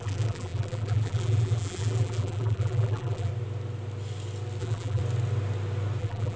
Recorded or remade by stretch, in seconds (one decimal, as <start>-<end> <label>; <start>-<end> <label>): 0.0-3.3 remade; 3.3-4.6 recorded; 4.6-5.0 remade; 5.0-6.0 recorded; 6.0-6.4 remade